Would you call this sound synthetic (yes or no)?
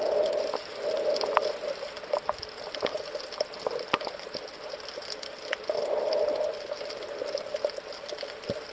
no